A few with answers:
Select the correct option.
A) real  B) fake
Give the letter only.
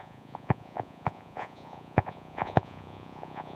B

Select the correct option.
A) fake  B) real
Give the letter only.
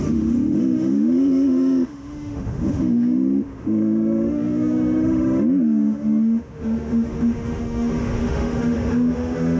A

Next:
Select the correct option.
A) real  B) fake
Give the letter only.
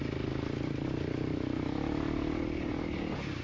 A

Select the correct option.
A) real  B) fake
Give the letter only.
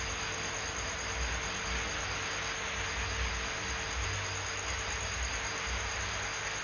A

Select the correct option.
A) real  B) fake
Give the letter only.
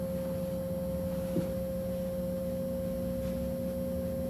A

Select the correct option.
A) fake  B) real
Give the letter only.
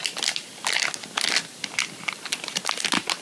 B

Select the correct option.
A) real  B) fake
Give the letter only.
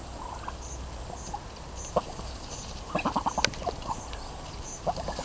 A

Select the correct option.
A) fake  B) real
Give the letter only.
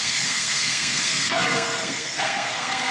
A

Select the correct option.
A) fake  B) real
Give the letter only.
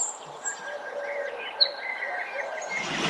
B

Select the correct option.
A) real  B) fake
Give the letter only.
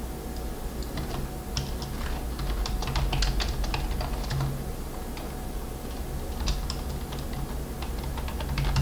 A